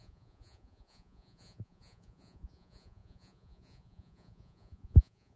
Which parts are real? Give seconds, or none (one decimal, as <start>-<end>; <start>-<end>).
none